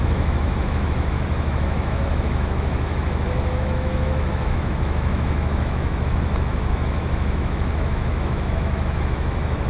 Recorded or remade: remade